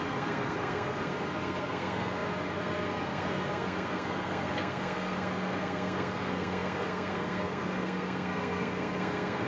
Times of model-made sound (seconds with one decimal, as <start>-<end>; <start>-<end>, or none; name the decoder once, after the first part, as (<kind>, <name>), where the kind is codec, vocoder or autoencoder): 0.0-9.5 (codec, SNAC)